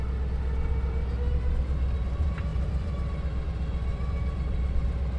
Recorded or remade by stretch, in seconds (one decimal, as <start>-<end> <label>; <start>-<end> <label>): 0.0-2.5 recorded; 2.5-3.4 remade; 3.4-3.9 recorded; 3.9-4.6 remade; 4.6-5.2 recorded